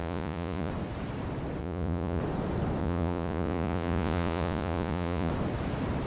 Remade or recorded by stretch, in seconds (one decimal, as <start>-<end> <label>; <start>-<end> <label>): 0.0-0.7 remade; 0.7-1.6 recorded; 1.6-2.2 remade; 2.2-2.8 recorded; 2.8-5.3 remade; 5.3-6.1 recorded